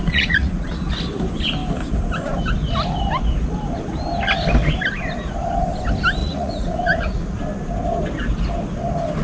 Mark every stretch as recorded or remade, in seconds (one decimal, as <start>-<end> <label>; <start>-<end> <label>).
0.0-0.9 remade; 0.9-6.2 recorded; 6.2-7.4 remade; 7.4-9.2 recorded